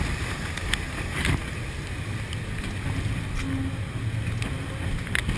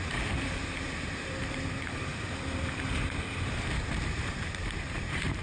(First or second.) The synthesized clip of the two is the second